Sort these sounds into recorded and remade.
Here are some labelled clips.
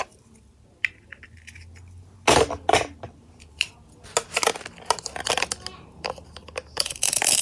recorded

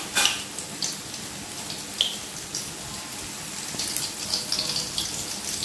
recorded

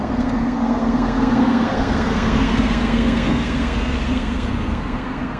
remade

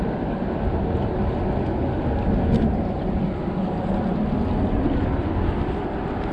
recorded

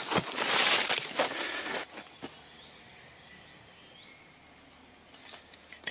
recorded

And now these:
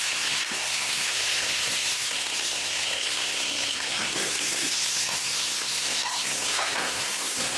remade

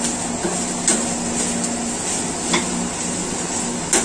recorded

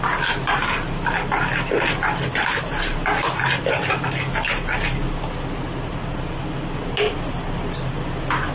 recorded